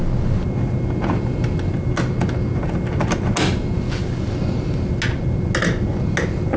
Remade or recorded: recorded